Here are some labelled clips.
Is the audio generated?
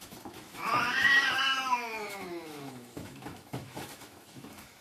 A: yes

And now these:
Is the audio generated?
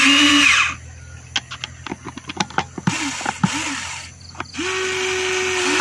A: no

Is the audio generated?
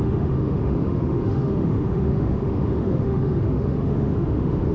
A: yes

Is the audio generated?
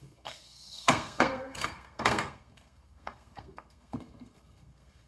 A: yes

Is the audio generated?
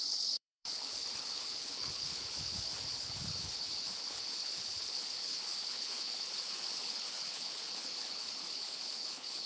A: yes